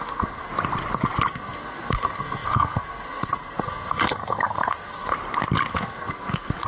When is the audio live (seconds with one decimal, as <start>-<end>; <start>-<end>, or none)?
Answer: 0.5-1.3; 5.1-5.7